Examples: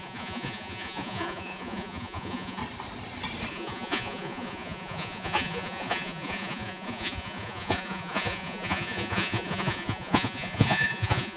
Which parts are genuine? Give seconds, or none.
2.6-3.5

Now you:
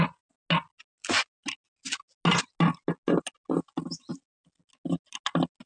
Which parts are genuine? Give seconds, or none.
0.0-5.7

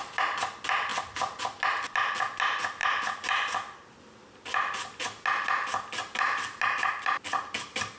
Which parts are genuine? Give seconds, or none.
0.0-8.0

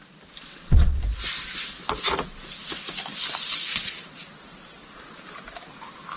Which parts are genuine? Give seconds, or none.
0.0-0.4; 1.0-6.2